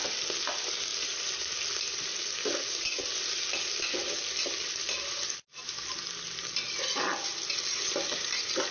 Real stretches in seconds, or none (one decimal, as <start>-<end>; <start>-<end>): 0.0-8.7